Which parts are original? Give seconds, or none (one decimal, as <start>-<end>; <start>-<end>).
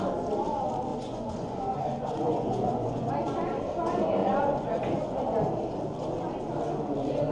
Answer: 0.0-0.9; 3.1-4.2; 5.2-7.3